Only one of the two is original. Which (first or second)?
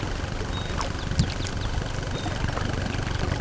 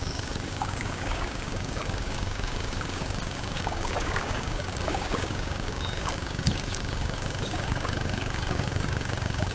first